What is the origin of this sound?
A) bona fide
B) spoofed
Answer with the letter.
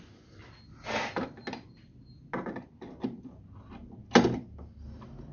A